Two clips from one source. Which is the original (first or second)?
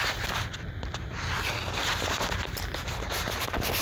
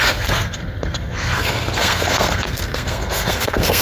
first